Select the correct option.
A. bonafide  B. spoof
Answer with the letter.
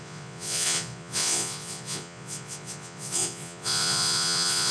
B